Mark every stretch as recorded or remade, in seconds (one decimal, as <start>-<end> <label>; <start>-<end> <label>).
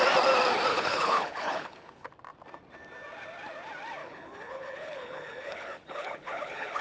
0.0-0.7 recorded; 0.7-2.1 remade; 2.1-4.0 recorded; 4.0-6.8 remade